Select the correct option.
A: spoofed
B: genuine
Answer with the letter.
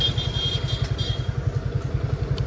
B